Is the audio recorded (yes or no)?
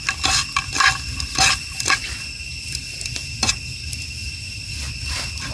yes